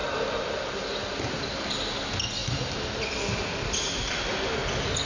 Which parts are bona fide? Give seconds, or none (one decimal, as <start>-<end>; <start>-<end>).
0.0-5.1